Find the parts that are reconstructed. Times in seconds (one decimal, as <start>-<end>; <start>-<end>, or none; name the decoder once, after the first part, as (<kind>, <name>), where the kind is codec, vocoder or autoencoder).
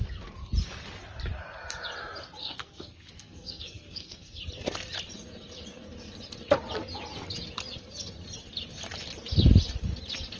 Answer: 2.4-4.4 (codec, SNAC)